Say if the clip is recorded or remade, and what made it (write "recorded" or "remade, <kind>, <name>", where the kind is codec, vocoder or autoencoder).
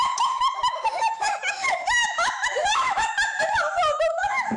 remade, autoencoder, DAC-VAE